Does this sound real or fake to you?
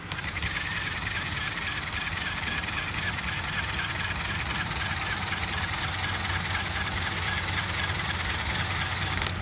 real